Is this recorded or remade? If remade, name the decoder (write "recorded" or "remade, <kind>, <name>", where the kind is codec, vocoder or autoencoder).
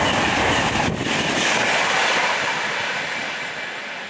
recorded